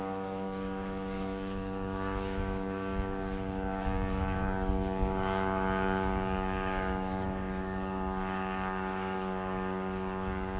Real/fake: fake